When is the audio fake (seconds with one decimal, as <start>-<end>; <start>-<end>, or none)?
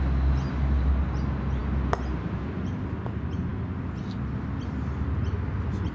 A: none